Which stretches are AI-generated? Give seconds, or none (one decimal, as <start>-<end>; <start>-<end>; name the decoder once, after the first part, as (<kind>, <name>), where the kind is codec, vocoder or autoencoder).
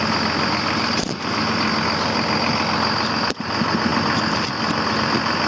none